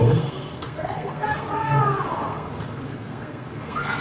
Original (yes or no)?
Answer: no